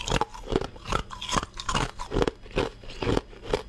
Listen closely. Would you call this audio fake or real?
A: real